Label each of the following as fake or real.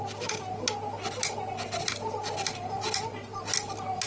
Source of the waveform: real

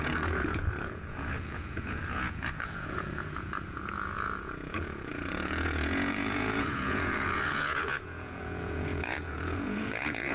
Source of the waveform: fake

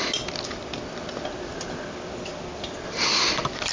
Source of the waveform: real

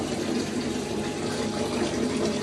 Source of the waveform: fake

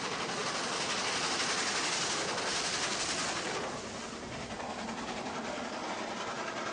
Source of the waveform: real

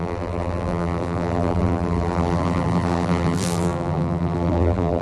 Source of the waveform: fake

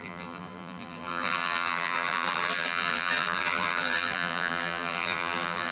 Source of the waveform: fake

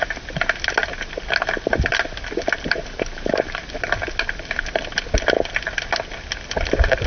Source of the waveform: real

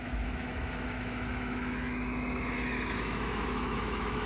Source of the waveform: fake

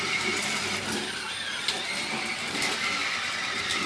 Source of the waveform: real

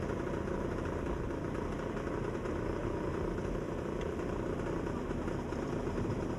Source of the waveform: real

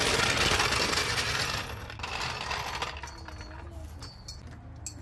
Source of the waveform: real